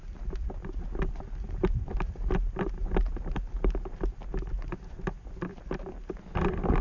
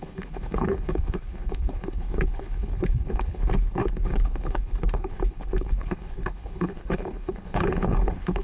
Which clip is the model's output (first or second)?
second